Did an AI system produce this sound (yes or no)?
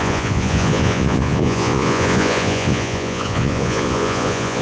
yes